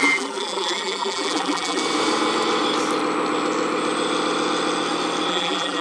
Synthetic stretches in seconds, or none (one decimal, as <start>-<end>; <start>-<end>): 0.0-1.8; 5.3-5.8